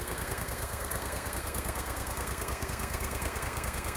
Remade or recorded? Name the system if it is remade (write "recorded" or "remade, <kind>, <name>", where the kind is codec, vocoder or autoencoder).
remade, codec, SNAC